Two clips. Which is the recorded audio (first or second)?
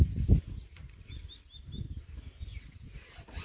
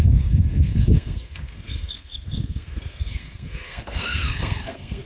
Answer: first